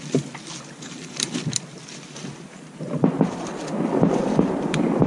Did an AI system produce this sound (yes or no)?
yes